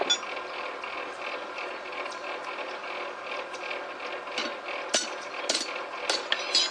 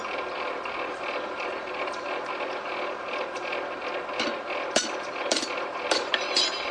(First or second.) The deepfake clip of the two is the second